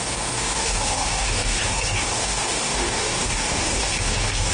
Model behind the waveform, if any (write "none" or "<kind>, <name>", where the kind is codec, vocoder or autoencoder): codec, DAC